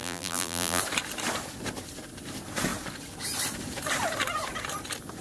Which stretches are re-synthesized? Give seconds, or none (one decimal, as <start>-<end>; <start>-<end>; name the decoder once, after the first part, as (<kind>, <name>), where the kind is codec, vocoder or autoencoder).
0.0-0.8 (vocoder, BigVGAN v2)